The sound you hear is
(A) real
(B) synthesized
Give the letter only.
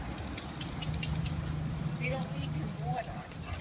A